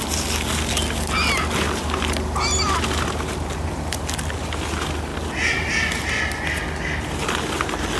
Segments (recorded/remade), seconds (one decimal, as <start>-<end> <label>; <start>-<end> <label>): 0.0-8.0 recorded